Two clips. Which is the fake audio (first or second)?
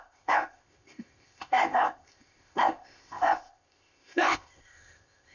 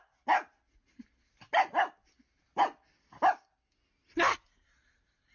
first